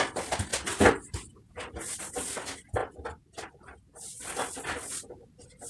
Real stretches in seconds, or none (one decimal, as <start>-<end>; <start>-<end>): 0.0-5.7